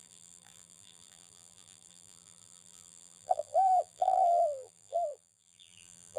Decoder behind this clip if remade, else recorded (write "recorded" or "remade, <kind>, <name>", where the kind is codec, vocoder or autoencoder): remade, vocoder, BigVGAN v2